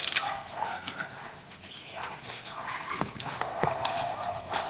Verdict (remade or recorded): remade